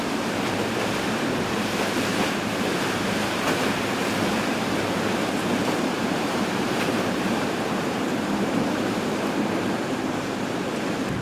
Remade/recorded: remade